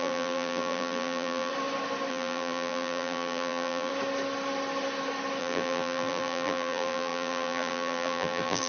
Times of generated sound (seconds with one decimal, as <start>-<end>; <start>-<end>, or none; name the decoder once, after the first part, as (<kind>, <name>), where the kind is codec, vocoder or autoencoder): 0.0-1.5 (vocoder, BigVGAN v2); 2.1-3.9; 5.4-8.7